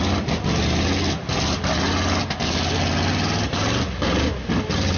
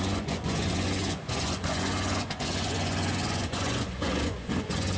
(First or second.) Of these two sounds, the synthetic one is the second